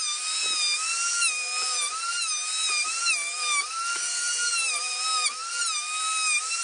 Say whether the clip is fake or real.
real